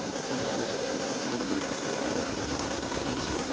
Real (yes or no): no